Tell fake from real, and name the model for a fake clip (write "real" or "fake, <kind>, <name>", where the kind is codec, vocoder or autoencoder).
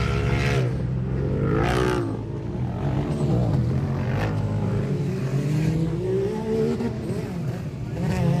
real